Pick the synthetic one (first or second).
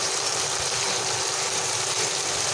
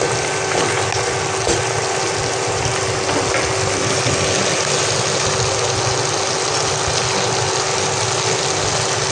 first